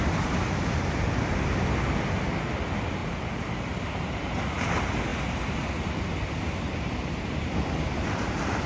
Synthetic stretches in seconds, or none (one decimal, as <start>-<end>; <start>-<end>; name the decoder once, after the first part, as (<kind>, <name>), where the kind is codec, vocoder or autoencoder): 3.0-4.4 (vocoder, BigVGAN v2)